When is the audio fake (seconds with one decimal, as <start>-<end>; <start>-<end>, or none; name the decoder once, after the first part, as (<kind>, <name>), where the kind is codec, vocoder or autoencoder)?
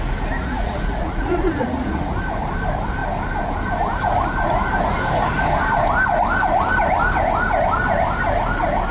0.4-2.0 (vocoder, Vocos)